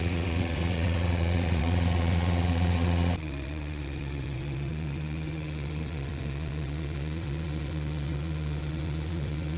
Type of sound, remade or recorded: remade